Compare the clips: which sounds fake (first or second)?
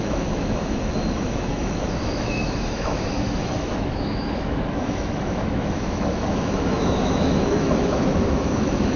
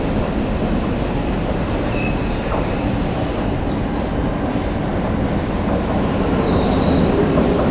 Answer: first